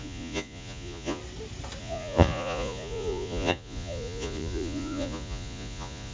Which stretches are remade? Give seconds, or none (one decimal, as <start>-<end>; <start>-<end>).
0.0-1.2; 1.8-6.1